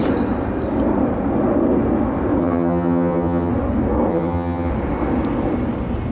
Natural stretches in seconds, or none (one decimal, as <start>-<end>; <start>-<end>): 0.0-2.4; 3.5-4.1; 4.7-6.1